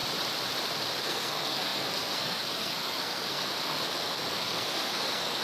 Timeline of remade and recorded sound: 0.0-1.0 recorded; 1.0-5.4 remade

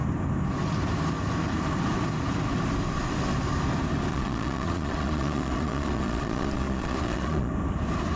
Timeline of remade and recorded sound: 0.0-4.1 recorded; 4.1-7.5 remade; 7.5-8.2 recorded

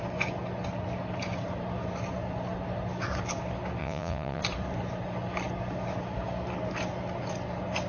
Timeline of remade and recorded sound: 0.0-3.8 recorded; 3.8-4.4 remade; 4.4-7.9 recorded

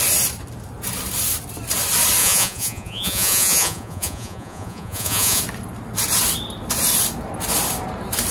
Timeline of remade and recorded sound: 0.0-2.2 recorded; 2.2-5.4 remade; 5.4-8.3 recorded

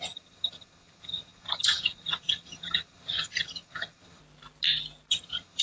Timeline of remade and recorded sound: 0.0-4.2 remade; 4.2-5.1 recorded; 5.1-5.6 remade

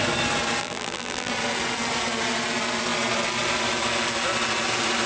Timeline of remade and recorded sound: 0.0-0.6 recorded; 0.6-1.3 remade; 1.3-5.1 recorded

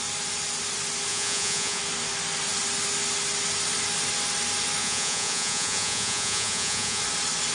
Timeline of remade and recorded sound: 0.0-1.1 recorded; 1.1-1.8 remade; 1.8-4.8 recorded; 4.8-7.0 remade; 7.0-7.5 recorded

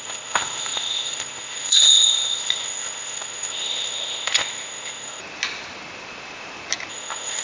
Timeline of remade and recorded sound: 0.0-5.2 remade; 5.2-6.9 recorded; 6.9-7.4 remade